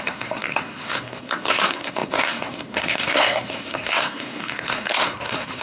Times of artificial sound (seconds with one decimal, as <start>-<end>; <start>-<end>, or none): 0.0-5.6